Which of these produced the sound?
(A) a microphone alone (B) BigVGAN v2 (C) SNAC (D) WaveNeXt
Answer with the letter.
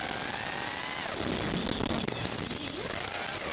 A